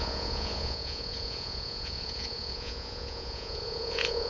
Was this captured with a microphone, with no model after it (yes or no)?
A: no